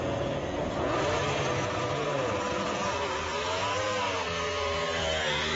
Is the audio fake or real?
fake